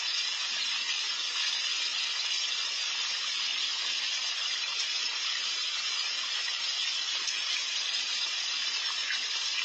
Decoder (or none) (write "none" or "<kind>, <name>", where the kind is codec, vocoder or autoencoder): none